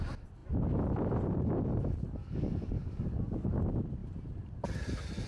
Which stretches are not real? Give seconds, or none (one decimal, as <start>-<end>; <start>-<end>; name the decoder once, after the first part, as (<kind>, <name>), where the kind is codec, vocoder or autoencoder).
2.2-3.6 (codec, DAC)